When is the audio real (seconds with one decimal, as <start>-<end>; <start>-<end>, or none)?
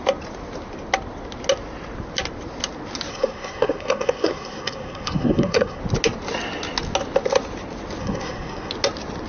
0.0-3.1; 5.8-8.0; 8.7-9.3